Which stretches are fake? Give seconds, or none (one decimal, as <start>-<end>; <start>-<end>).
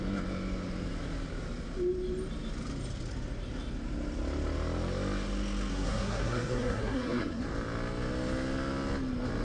5.7-7.4